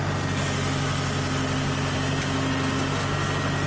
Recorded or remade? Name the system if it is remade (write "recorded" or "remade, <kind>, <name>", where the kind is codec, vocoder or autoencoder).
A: recorded